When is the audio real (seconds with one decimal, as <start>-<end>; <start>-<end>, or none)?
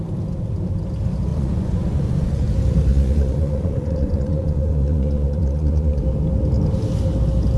0.0-1.3; 2.5-2.9; 6.0-7.6